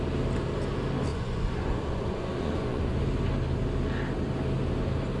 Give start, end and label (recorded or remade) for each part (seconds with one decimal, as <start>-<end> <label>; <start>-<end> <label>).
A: 0.0-1.1 recorded; 1.1-3.0 remade; 3.0-5.2 recorded